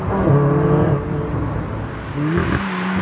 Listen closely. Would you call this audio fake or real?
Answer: real